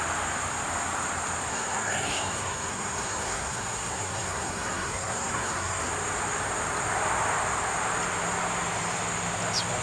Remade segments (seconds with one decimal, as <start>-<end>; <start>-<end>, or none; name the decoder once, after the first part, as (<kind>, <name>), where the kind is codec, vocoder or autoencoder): 1.5-5.9 (codec, SNAC)